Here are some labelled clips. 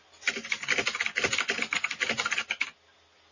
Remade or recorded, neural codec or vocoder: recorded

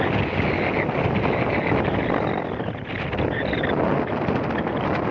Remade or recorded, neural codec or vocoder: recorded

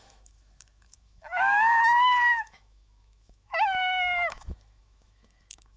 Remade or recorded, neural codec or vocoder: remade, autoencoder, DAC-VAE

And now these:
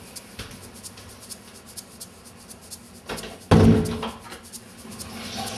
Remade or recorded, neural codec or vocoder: recorded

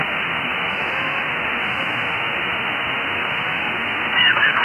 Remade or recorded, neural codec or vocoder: remade, autoencoder, DAC-VAE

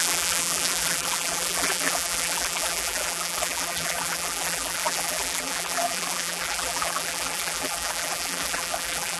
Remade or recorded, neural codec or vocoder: remade, vocoder, BigVGAN v2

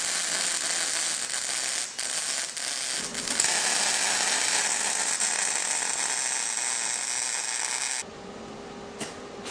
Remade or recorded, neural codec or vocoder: recorded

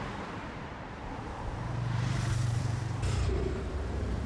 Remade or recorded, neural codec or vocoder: remade, vocoder, BigVGAN v2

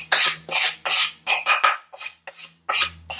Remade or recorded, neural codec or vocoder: recorded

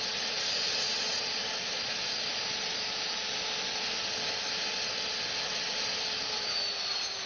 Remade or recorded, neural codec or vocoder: recorded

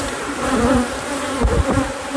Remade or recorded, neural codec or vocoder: remade, vocoder, BigVGAN v2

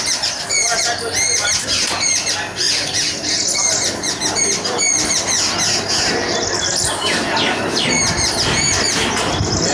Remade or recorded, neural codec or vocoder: remade, vocoder, BigVGAN v2